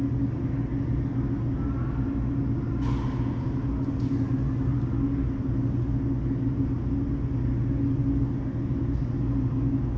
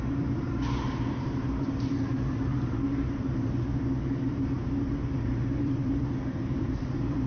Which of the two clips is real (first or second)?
first